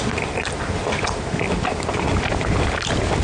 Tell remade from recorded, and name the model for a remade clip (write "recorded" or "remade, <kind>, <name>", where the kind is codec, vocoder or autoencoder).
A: recorded